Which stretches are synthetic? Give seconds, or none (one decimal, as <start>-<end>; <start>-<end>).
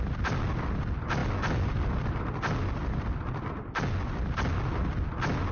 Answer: none